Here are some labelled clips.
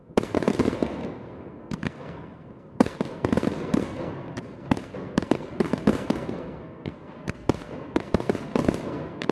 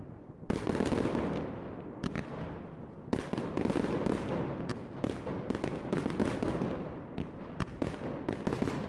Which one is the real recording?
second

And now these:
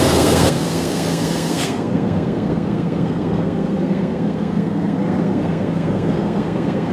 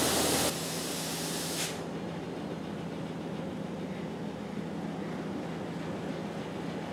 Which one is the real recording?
second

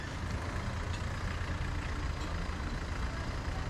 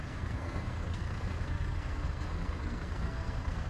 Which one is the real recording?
first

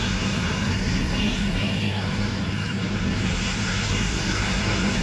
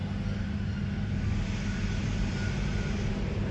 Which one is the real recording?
second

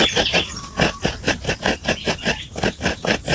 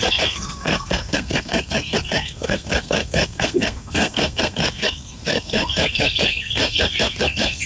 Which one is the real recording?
first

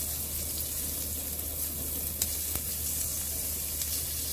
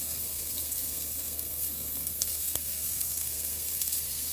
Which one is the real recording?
first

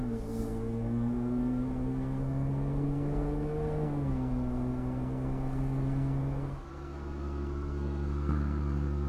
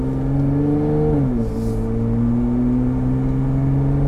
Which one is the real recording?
second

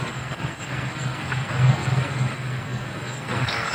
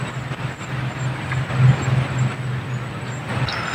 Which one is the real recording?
second